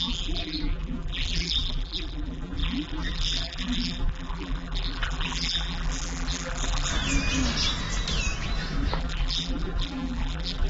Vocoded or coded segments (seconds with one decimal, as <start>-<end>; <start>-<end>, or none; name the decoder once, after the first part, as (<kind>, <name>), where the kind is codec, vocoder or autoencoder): 0.0-6.9 (vocoder, BigVGAN v2); 9.0-10.7